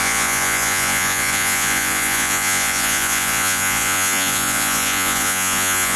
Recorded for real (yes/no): no